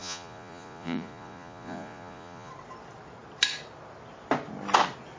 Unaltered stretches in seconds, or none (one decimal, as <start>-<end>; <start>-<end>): 2.5-5.2